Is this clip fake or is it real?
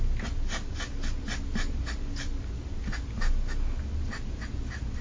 real